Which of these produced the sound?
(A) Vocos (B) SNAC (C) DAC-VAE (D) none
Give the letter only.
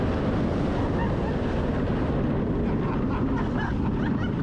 D